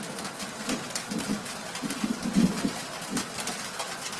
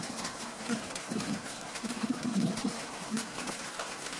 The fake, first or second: second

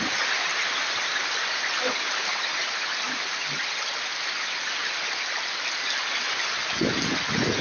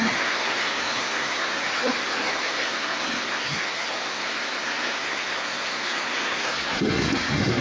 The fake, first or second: second